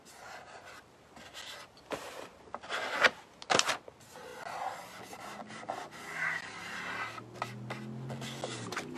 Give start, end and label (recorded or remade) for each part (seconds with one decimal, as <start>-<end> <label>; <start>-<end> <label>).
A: 0.0-9.0 recorded